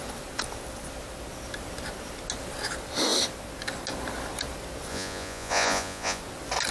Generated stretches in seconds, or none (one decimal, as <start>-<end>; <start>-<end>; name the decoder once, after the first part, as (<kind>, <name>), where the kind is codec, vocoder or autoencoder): 4.9-6.2 (vocoder, Vocos)